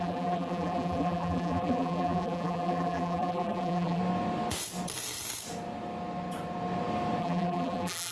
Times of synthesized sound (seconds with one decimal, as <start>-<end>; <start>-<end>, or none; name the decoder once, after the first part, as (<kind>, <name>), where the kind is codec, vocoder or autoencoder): 0.0-4.0 (vocoder, BigVGAN v2); 7.2-8.1